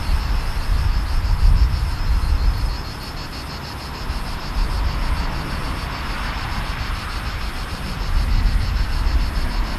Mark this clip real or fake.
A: real